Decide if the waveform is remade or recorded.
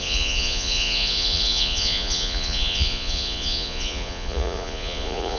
remade